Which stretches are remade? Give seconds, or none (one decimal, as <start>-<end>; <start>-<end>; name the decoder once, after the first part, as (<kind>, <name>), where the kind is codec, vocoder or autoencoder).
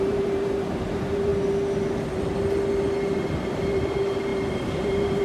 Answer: 0.0-1.3 (vocoder, BigVGAN v2); 3.5-5.2